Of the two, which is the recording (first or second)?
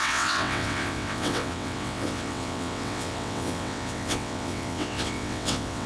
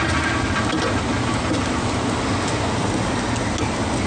second